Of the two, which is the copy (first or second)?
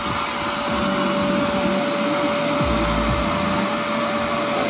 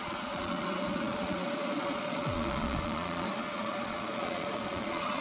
second